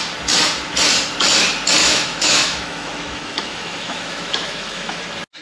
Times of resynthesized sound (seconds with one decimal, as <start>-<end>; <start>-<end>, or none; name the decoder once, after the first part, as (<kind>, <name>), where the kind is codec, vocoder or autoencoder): 1.8-5.0 (autoencoder, DAC-VAE)